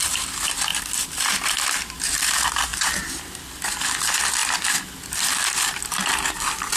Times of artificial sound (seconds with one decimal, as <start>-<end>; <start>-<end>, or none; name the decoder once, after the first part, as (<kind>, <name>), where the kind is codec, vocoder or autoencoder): 0.7-1.9 (vocoder, BigVGAN v2)